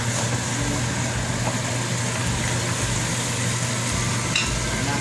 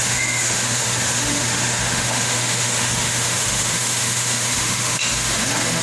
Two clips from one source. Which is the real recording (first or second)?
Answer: first